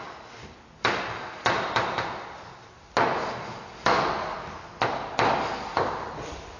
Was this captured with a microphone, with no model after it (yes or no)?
yes